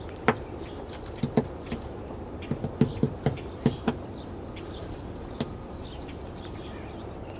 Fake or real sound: real